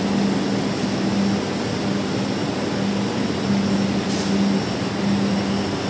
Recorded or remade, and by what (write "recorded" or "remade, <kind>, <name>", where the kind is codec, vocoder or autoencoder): recorded